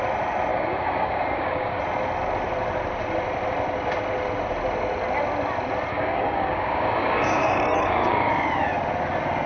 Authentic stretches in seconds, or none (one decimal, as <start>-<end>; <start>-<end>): 0.0-0.5; 1.8-5.9; 8.3-9.5